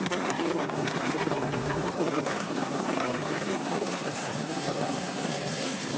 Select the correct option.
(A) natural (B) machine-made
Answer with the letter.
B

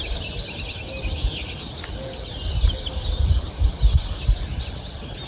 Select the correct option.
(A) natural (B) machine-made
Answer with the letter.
A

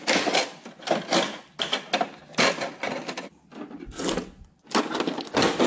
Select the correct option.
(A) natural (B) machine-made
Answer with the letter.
A